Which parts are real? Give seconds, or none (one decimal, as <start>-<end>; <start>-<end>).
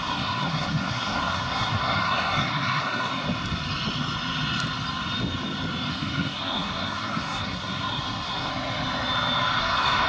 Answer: 3.1-5.9; 8.5-9.6